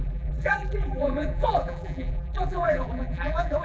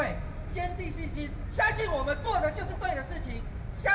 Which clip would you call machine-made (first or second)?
first